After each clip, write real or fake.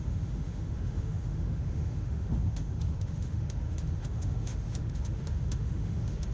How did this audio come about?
fake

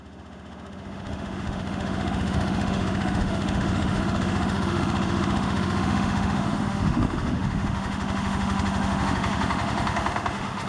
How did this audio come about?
fake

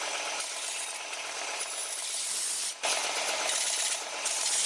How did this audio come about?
real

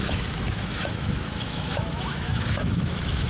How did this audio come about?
fake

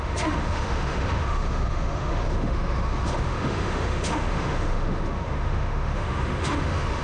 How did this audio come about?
fake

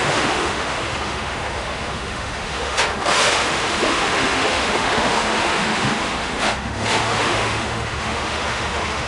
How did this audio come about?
fake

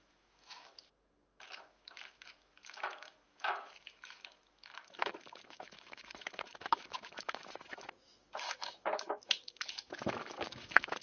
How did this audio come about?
fake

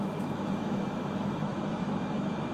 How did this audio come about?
fake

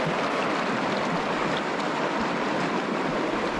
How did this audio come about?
real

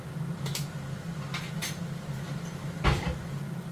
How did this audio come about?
real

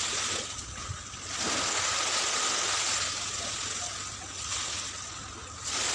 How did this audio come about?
real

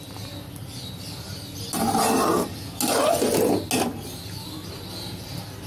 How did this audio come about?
real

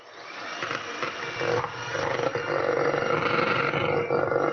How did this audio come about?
real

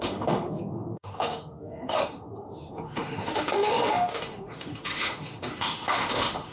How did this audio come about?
fake